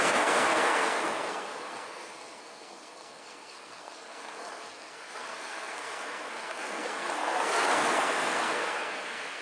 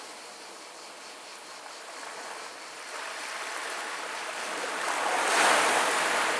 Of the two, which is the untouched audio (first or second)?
second